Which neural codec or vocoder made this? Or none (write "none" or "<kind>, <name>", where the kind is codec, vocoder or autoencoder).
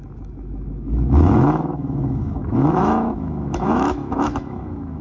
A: autoencoder, DAC-VAE